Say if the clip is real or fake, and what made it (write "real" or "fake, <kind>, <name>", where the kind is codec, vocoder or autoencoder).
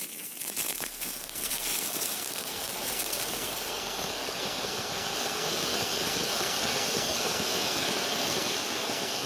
fake, codec, SNAC